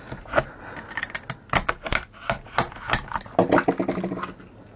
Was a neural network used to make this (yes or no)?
no